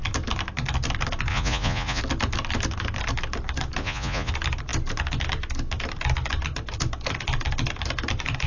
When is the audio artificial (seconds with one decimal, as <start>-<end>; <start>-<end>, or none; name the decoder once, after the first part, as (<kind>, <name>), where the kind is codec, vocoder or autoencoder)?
1.3-2.0 (vocoder, Vocos); 3.8-4.3